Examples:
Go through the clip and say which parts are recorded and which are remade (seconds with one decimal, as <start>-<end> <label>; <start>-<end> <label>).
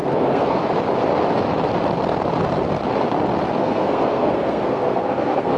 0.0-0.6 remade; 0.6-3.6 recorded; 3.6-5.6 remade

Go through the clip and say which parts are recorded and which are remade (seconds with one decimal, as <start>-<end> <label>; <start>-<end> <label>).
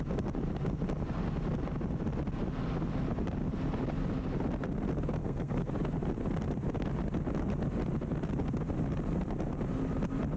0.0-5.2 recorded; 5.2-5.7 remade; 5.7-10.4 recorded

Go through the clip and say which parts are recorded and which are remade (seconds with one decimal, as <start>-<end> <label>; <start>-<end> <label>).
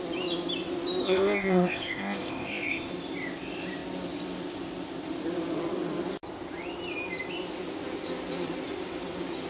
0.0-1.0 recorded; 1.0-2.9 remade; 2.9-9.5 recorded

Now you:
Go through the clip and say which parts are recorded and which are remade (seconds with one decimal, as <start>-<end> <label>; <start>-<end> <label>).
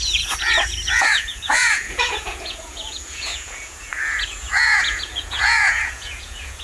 0.0-6.6 remade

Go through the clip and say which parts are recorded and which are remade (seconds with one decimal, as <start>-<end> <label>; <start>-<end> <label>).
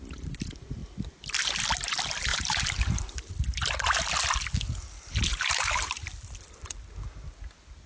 0.0-2.3 recorded; 2.3-3.3 remade; 3.3-5.3 recorded; 5.3-6.2 remade; 6.2-7.9 recorded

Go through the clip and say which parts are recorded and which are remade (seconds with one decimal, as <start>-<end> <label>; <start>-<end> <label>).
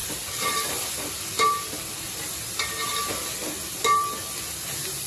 0.0-0.8 remade; 0.8-3.4 recorded; 3.4-5.1 remade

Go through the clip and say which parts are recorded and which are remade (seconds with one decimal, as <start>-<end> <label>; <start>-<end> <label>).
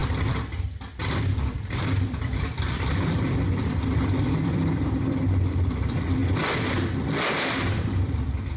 0.0-1.2 recorded; 1.2-6.2 remade; 6.2-7.4 recorded; 7.4-8.6 remade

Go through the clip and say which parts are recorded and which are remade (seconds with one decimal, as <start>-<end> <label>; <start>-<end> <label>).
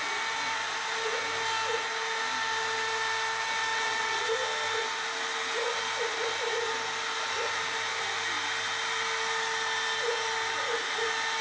0.0-3.7 recorded; 3.7-4.3 remade; 4.3-11.4 recorded